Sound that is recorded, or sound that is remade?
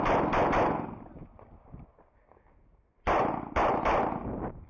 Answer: recorded